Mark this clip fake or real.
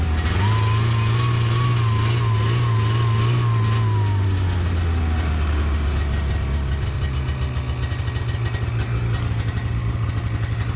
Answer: real